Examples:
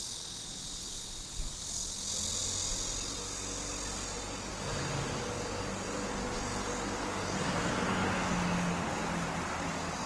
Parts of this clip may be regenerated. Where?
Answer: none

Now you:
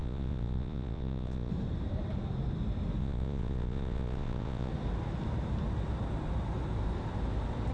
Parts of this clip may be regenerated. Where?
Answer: 0.0-1.5 (vocoder, Vocos); 3.0-4.7

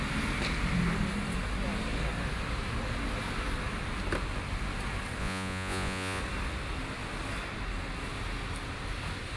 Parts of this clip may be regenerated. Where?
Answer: 5.2-6.2 (vocoder, Vocos)

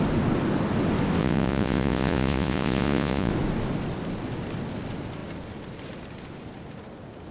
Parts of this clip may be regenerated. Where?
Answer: 1.2-3.3 (vocoder, Vocos)

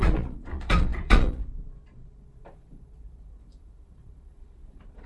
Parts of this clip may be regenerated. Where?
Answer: 0.0-5.1 (vocoder, Vocos)

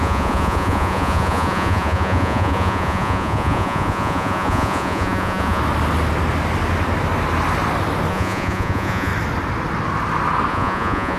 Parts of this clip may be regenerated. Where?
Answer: 0.0-5.6 (vocoder, Vocos); 8.1-9.1; 10.5-11.2

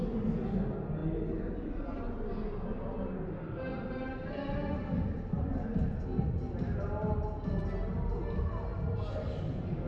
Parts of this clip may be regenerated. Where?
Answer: none